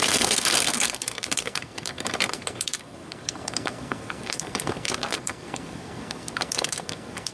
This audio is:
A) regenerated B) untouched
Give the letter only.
A